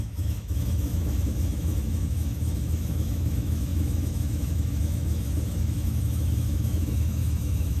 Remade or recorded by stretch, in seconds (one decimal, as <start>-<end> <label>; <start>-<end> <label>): 0.0-7.8 remade